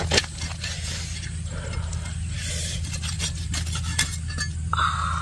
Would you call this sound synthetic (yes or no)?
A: no